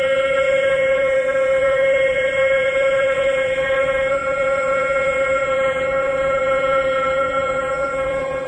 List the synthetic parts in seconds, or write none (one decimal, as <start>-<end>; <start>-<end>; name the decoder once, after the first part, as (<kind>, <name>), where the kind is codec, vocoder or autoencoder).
0.0-8.5 (vocoder, BigVGAN v2)